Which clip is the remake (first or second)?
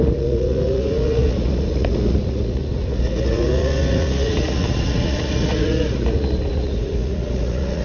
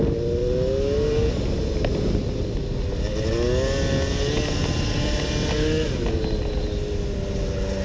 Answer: first